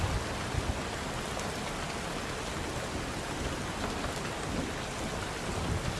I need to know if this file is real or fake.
real